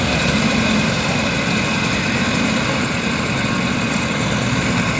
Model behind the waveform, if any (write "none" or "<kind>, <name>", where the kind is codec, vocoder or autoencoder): none